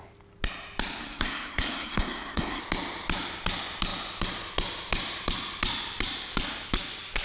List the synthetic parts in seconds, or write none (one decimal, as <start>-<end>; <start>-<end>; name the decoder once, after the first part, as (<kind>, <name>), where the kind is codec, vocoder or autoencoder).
1.0-2.6 (codec, SNAC)